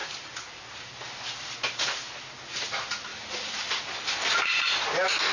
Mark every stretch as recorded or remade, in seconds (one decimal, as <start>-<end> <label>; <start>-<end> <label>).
0.0-0.6 remade; 0.6-3.1 recorded; 3.1-4.4 remade; 4.4-5.3 recorded